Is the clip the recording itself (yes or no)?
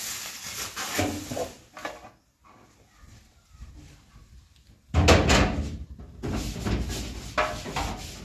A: yes